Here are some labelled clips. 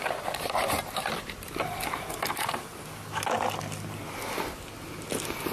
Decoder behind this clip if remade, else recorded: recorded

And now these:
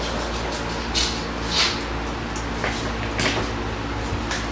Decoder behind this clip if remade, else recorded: recorded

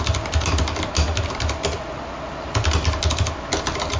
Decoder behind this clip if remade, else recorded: recorded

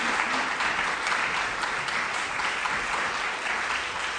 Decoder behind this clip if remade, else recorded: recorded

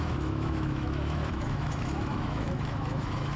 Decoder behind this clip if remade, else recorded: remade, autoencoder, DAC-VAE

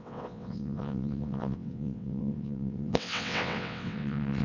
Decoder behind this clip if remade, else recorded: remade, vocoder, WaveNeXt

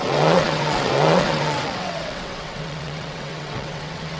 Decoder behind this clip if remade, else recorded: remade, vocoder, WaveNeXt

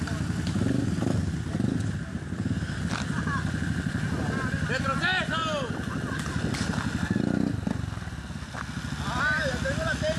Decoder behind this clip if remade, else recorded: recorded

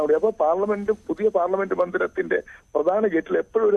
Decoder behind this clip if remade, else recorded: recorded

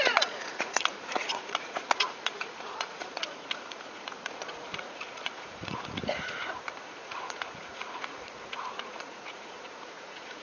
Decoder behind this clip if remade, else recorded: remade, vocoder, Vocos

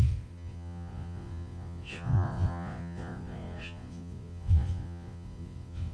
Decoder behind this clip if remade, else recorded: remade, vocoder, Vocos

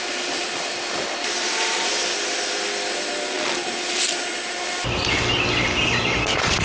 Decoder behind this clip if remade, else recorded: recorded